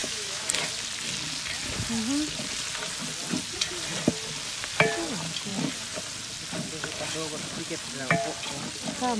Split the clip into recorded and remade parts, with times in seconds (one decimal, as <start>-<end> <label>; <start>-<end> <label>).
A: 0.0-0.6 remade; 0.6-9.2 recorded